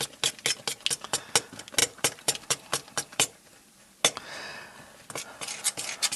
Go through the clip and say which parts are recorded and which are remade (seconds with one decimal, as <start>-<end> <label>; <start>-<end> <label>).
0.0-1.8 recorded; 1.8-3.8 remade; 3.8-6.2 recorded